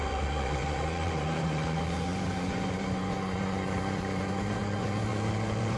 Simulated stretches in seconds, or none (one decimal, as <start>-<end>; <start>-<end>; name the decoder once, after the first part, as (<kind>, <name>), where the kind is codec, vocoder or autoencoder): 0.0-5.8 (vocoder, Vocos)